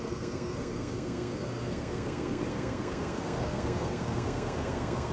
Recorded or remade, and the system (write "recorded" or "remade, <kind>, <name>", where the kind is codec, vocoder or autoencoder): remade, codec, SNAC